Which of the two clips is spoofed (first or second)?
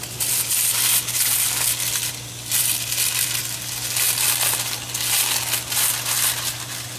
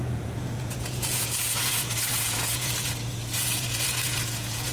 second